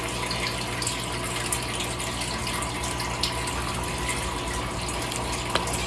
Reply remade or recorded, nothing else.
recorded